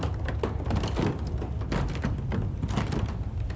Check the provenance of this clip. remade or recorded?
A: recorded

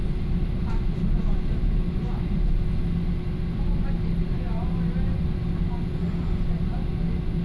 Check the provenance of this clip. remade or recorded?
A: recorded